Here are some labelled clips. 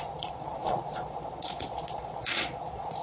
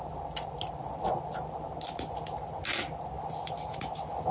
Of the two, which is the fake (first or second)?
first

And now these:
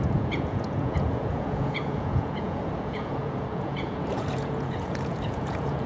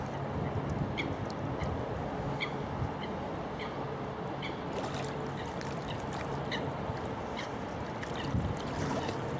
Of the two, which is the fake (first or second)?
first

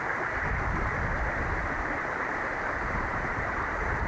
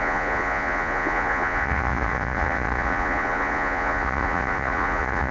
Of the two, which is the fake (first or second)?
second